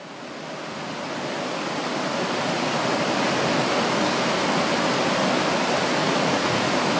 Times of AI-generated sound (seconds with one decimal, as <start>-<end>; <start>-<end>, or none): 6.0-6.6